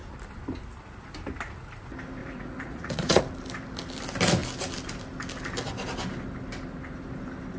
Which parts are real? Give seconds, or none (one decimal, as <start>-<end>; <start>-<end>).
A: 0.0-2.2; 3.2-7.6